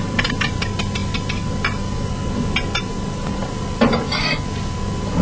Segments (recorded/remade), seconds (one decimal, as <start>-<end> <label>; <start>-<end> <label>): 0.0-5.2 recorded